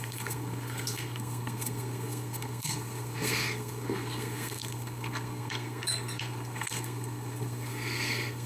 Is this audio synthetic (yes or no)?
yes